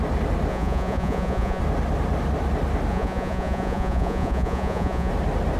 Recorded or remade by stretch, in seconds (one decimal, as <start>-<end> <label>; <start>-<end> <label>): 0.0-0.5 recorded; 0.5-1.6 remade; 1.6-2.9 recorded; 2.9-5.1 remade; 5.1-5.6 recorded

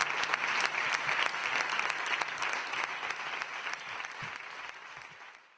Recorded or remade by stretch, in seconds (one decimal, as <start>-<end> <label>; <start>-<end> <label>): 0.0-5.6 recorded

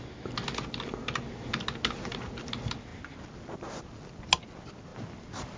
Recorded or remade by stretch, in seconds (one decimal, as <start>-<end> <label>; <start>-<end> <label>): 0.0-5.6 recorded

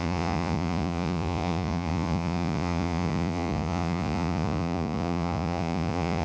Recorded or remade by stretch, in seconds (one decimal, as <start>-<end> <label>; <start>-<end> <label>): 0.0-6.2 remade